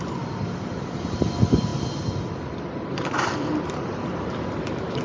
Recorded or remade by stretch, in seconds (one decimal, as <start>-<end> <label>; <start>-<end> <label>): 0.0-5.0 recorded